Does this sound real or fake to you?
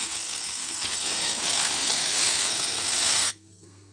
fake